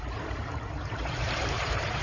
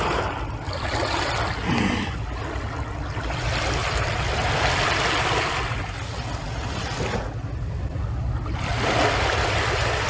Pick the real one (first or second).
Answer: second